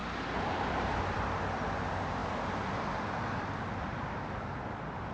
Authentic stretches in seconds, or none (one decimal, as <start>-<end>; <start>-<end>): 1.7-5.1